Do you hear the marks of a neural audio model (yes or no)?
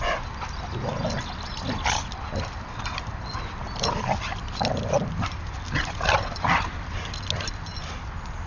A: no